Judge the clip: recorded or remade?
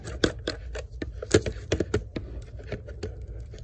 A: recorded